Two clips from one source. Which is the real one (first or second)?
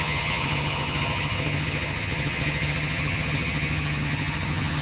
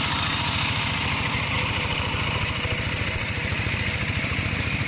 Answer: second